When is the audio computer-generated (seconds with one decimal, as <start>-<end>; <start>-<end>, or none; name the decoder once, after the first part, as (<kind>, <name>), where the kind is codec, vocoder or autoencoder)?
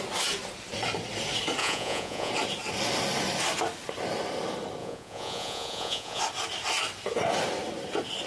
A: 1.6-2.3 (vocoder, Vocos); 4.8-6.2